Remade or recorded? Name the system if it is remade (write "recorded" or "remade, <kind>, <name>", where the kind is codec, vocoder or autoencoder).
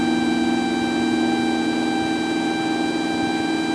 recorded